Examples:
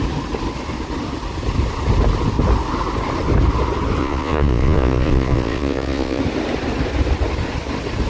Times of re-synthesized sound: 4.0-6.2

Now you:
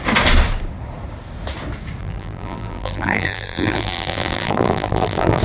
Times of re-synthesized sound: 2.0-5.4

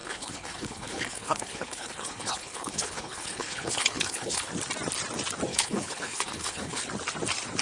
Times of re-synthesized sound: 0.0-4.5; 5.5-6.9

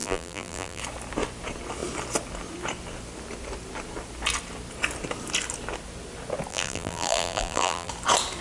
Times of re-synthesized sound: 0.0-0.8; 6.5-7.9

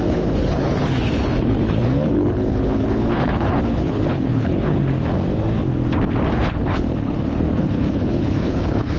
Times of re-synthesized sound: 0.0-4.8; 6.3-9.0

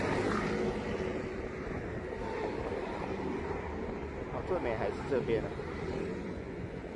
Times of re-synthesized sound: 6.1-7.0

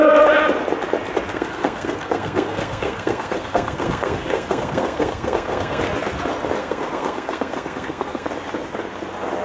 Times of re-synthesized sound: 1.3-5.8; 6.6-8.3